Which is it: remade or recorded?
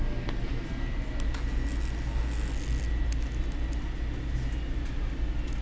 recorded